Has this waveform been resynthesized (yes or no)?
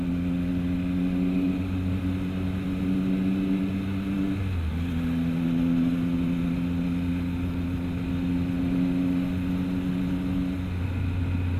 no